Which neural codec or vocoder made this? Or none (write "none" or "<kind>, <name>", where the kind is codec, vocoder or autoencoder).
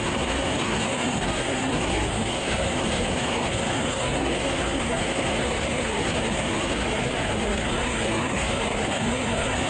codec, SNAC